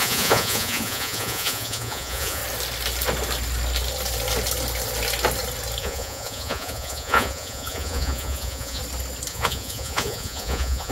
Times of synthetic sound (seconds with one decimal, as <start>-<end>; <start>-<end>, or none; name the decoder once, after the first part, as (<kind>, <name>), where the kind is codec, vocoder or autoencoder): 0.0-2.4 (vocoder, Vocos); 5.8-8.8; 9.3-10.9